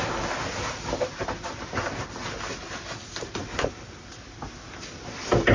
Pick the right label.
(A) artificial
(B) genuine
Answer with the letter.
B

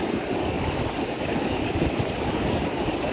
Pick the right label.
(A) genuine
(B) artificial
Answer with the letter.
B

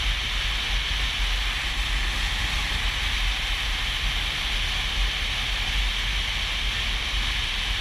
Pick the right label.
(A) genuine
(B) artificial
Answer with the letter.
A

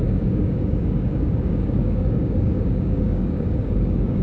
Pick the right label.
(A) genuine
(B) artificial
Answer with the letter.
B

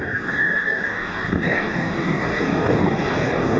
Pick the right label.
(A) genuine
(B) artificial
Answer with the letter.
B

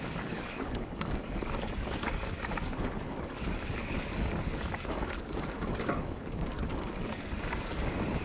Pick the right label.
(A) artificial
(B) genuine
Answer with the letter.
A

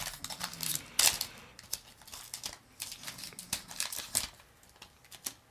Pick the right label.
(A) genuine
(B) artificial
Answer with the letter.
A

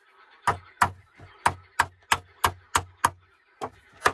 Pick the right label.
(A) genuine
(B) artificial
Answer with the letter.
A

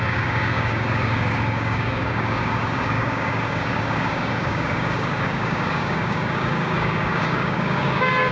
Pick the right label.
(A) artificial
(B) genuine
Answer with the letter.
A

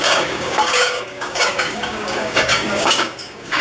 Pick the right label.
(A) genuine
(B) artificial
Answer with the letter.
B